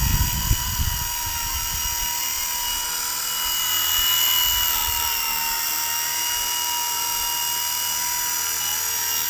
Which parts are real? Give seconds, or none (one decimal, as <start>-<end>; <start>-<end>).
0.0-9.3